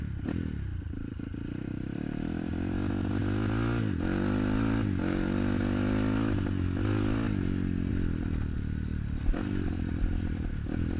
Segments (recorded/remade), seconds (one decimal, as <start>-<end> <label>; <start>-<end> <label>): 0.0-3.2 remade; 3.2-7.9 recorded; 7.9-11.0 remade